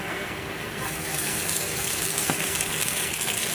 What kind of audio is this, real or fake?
fake